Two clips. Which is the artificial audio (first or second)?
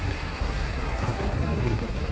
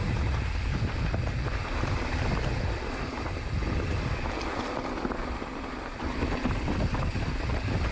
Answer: first